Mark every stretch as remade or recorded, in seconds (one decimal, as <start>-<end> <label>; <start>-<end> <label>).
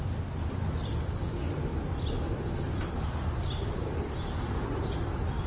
0.0-5.5 recorded